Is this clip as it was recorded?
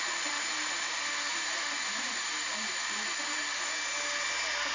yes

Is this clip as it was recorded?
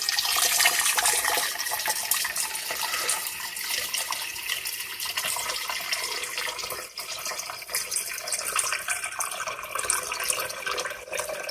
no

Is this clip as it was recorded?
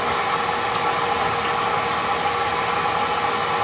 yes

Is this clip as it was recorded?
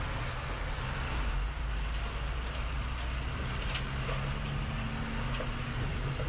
yes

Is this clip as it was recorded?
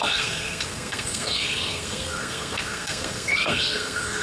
no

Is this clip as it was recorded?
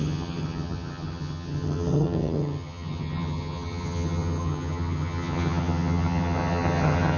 no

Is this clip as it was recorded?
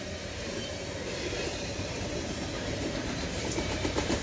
no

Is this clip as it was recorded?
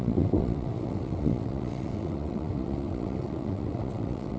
no